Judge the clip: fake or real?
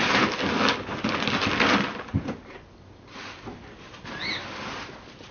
real